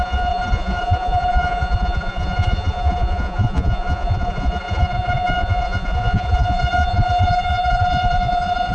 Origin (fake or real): fake